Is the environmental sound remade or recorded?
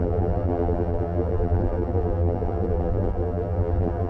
remade